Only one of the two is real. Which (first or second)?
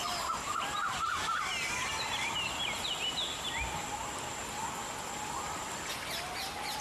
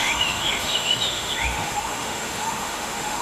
first